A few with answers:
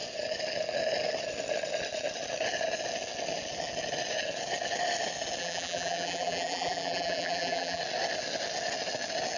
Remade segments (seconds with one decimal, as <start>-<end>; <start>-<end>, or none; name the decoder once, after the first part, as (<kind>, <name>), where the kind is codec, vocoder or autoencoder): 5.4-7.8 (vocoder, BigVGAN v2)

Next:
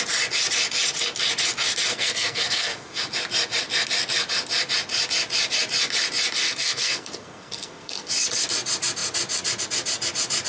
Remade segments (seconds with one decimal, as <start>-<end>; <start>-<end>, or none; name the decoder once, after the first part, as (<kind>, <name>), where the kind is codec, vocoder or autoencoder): 1.9-3.0 (codec, SNAC); 6.4-8.1

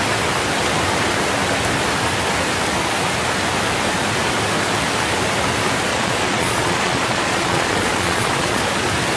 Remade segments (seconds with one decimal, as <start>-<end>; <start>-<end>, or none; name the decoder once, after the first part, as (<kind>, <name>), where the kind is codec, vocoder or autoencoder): 5.9-8.6 (vocoder, Vocos)